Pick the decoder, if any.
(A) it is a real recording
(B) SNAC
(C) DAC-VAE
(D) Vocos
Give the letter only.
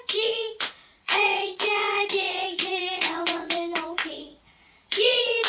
D